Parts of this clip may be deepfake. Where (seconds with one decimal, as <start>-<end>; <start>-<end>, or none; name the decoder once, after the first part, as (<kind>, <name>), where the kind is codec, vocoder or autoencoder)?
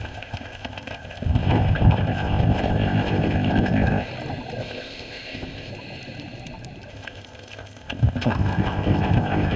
0.0-4.1 (codec, ZipCodec); 4.6-5.7; 6.9-9.6